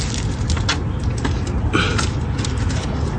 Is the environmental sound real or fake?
real